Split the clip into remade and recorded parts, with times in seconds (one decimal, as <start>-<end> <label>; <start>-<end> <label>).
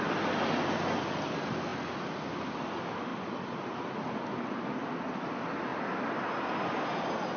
0.0-7.4 recorded